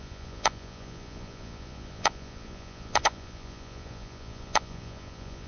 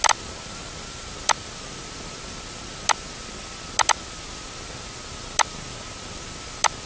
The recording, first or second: second